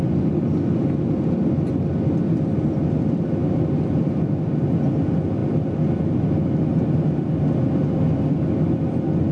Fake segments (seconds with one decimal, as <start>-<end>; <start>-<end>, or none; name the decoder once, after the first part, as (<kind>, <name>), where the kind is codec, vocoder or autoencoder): none